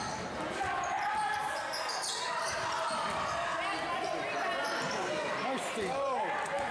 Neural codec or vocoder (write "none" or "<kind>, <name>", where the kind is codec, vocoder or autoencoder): none